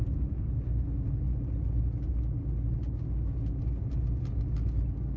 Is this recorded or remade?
recorded